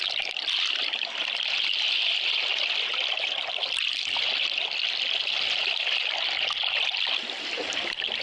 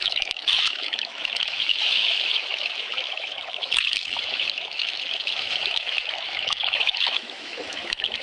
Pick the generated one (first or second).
second